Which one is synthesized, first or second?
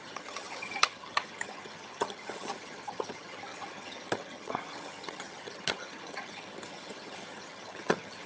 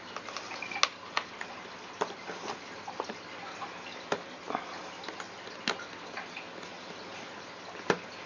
first